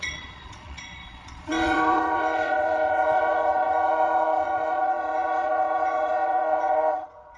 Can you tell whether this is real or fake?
fake